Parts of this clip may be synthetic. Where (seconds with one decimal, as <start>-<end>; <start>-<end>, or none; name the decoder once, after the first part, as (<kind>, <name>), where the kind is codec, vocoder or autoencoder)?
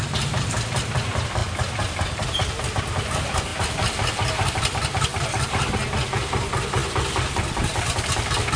none